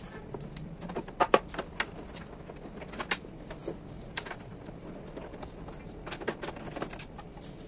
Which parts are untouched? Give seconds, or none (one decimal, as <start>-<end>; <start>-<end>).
0.0-7.7